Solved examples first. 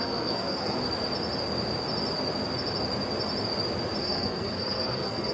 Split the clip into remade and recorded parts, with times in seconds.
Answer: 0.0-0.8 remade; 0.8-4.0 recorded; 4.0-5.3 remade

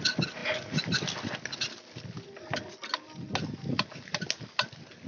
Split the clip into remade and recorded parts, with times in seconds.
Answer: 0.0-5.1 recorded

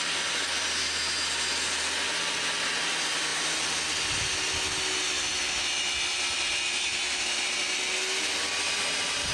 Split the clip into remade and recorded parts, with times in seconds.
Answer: 0.0-9.3 recorded

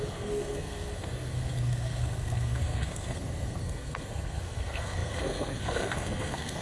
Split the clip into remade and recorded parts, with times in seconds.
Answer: 0.0-6.6 remade